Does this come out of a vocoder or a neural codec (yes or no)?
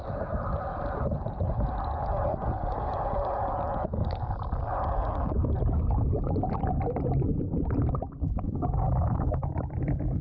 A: no